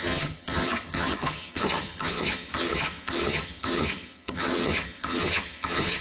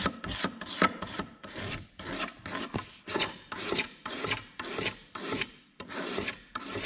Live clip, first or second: second